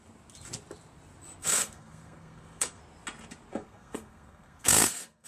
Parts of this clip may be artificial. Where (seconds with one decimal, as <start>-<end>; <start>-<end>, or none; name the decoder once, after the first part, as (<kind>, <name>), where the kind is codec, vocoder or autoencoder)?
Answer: 1.4-2.8 (codec, SNAC); 3.5-5.3